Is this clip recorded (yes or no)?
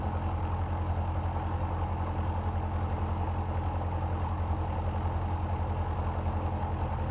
yes